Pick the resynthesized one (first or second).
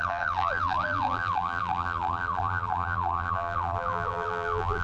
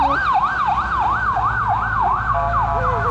first